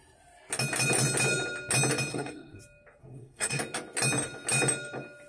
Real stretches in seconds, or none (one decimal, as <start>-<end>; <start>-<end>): 0.0-2.1; 2.6-3.0; 3.6-5.3